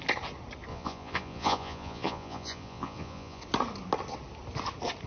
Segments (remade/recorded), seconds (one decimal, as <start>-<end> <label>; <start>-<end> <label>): 0.0-0.7 recorded; 0.7-3.4 remade; 3.4-5.1 recorded

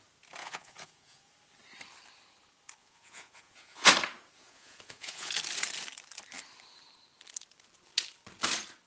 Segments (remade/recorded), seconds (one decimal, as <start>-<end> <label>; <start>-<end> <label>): 0.0-0.4 recorded; 0.4-1.3 remade; 1.3-2.8 recorded; 2.8-3.9 remade; 3.9-4.4 recorded; 4.4-5.3 remade; 5.3-8.9 recorded

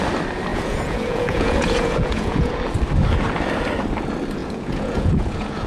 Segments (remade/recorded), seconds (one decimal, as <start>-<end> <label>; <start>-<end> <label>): 0.0-0.5 recorded; 0.5-2.6 remade; 2.6-4.4 recorded; 4.4-5.7 remade

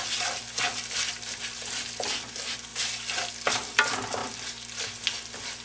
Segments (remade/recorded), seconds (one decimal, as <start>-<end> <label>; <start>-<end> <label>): 0.0-5.6 recorded

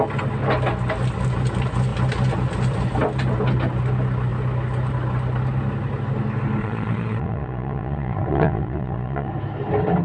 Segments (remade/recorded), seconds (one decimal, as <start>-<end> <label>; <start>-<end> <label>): 0.0-6.6 recorded; 6.6-9.3 remade; 9.3-10.0 recorded